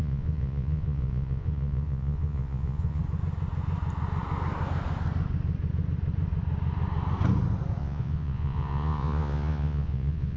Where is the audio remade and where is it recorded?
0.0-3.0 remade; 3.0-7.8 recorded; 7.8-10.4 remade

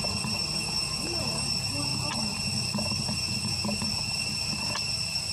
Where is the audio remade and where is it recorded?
0.0-5.3 recorded

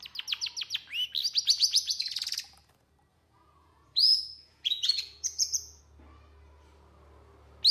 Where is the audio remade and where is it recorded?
0.0-1.6 recorded; 1.6-2.1 remade; 2.1-3.1 recorded; 3.1-5.8 remade; 5.8-7.7 recorded

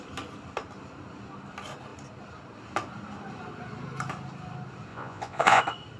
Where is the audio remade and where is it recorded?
0.0-4.9 recorded; 4.9-5.6 remade; 5.6-6.0 recorded